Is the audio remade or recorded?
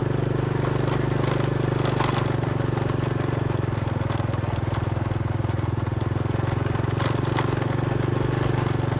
recorded